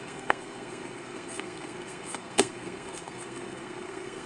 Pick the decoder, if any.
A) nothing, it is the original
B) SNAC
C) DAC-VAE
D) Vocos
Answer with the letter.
B